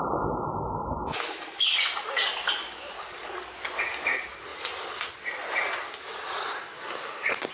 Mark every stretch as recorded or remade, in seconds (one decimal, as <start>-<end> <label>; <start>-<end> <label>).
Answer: 0.0-6.6 recorded; 6.6-7.5 remade